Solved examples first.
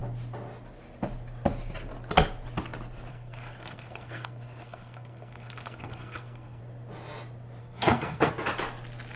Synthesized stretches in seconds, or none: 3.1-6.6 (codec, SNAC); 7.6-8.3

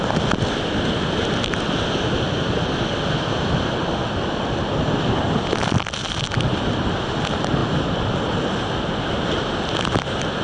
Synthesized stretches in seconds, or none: none

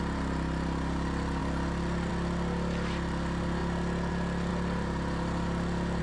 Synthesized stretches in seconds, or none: 4.5-6.0 (vocoder, BigVGAN v2)

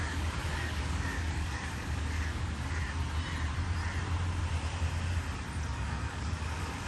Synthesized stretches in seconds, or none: 0.0-2.8 (codec, DAC); 5.7-6.9

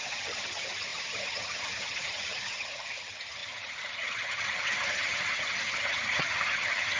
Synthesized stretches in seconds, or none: 0.0-7.0 (vocoder, HiFi-GAN)

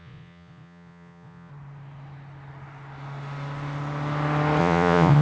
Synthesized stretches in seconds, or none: 0.0-1.5 (vocoder, Vocos); 4.6-5.2

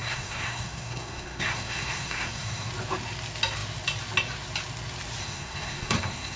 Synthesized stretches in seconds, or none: 0.0-2.7 (codec, SNAC); 5.2-6.4